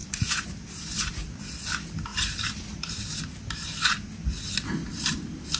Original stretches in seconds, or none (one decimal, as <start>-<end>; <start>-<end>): 1.1-2.1; 3.2-5.6